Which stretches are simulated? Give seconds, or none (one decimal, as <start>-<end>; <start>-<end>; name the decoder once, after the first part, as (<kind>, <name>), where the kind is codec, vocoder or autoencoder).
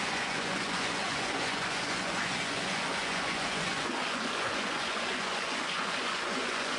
0.0-6.8 (vocoder, Vocos)